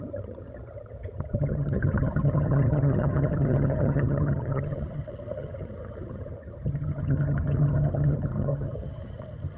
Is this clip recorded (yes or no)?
no